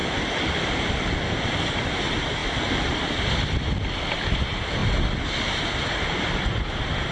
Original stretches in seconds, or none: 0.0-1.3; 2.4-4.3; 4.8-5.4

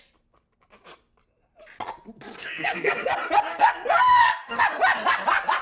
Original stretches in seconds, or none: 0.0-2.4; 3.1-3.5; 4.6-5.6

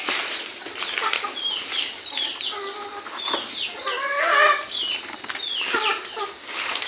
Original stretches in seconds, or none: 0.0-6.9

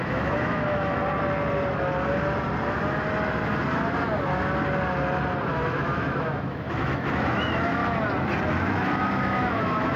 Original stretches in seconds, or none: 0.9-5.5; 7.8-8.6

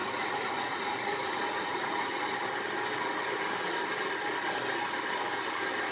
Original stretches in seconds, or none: 2.1-5.9

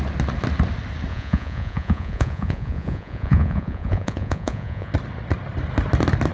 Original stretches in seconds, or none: 0.0-1.1; 4.9-6.3

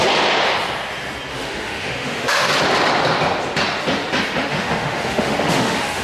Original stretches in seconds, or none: 0.0-1.3; 2.5-4.4

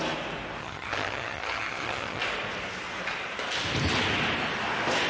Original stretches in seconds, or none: 0.0-0.6; 2.2-5.1